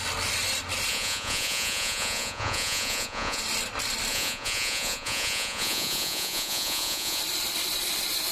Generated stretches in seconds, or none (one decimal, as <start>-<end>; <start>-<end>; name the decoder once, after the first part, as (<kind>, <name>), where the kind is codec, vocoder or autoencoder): 0.9-3.4 (vocoder, Vocos); 4.1-7.2